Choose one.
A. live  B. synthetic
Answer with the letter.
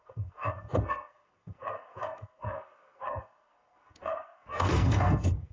B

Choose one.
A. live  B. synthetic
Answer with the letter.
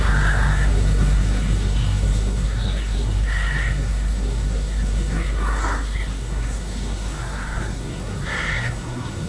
B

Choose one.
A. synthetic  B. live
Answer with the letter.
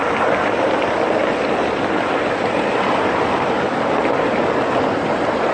B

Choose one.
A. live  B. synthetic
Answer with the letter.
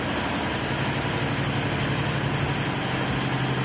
A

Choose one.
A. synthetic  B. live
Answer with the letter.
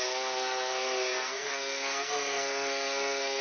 A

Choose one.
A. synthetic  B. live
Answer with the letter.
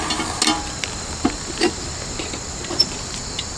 B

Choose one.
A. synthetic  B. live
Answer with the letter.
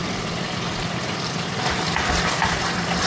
B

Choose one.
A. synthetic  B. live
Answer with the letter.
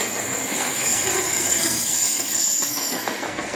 A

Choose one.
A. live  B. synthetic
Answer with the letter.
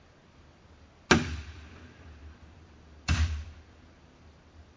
A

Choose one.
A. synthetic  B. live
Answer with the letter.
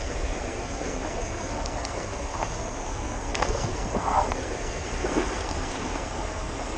A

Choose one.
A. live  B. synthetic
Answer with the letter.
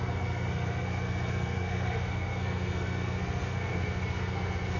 B